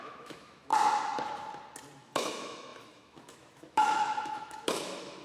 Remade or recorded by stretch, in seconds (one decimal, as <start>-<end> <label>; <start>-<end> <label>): 0.0-0.7 remade; 0.7-2.0 recorded; 2.0-5.2 remade